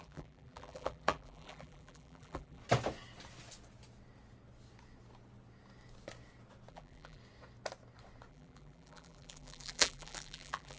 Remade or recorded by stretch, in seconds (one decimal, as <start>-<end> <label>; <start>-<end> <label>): 0.0-2.6 remade; 2.6-6.7 recorded; 6.7-7.2 remade; 7.2-8.3 recorded; 8.3-10.8 remade